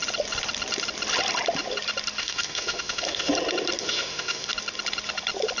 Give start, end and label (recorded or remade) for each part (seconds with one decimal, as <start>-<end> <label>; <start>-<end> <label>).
0.0-2.2 recorded; 2.2-3.3 remade; 3.3-3.8 recorded; 3.8-4.5 remade; 4.5-5.6 recorded